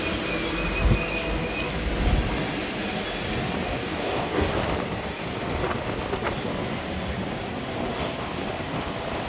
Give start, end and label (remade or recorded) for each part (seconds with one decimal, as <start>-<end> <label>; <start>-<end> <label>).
0.0-3.8 recorded; 3.8-4.5 remade; 4.5-9.3 recorded